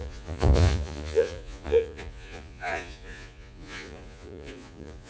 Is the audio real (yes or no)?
no